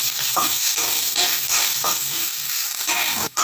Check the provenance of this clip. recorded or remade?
remade